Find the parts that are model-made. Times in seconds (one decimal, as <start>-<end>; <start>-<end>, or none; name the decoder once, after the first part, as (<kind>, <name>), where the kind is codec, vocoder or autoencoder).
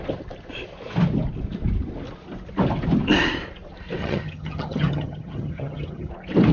4.0-6.1 (vocoder, HiFi-GAN)